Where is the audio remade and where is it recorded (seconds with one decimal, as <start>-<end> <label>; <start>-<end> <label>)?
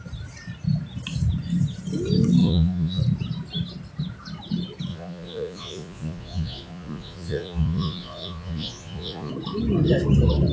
0.0-2.4 recorded; 2.4-3.0 remade; 3.0-4.9 recorded; 4.9-9.3 remade; 9.3-10.5 recorded